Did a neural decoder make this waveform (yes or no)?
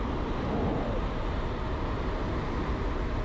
no